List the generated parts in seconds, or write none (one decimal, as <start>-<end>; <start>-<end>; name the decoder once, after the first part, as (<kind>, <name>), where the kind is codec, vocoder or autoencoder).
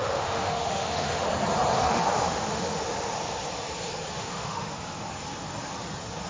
0.0-1.3 (autoencoder, DAC-VAE); 1.8-2.8; 4.2-4.7